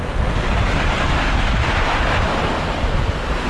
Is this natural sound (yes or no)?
yes